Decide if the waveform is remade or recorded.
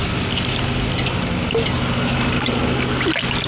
recorded